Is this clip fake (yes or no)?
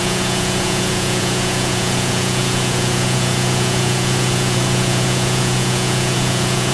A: yes